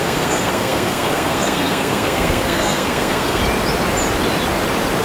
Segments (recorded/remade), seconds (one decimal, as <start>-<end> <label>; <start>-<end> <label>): 0.0-3.4 remade; 3.4-5.0 recorded